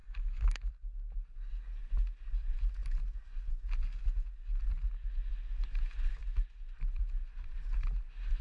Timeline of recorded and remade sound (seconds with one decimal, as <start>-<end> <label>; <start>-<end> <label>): 0.0-0.7 remade; 0.7-8.4 recorded